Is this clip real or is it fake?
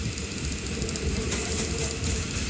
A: real